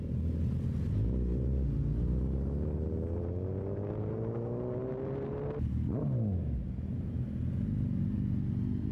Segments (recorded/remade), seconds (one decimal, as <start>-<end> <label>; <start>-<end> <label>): 0.0-8.9 recorded